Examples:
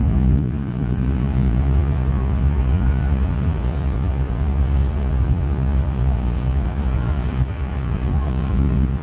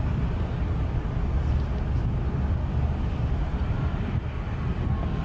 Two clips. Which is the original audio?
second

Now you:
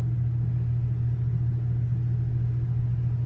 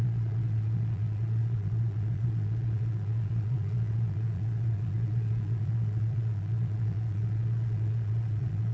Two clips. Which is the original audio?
first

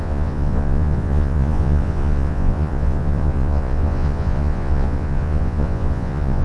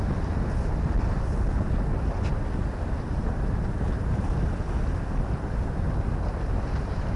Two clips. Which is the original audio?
second